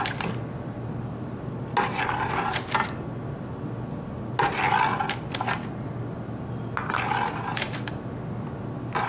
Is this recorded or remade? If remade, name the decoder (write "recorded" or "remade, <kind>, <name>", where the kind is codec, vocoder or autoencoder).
recorded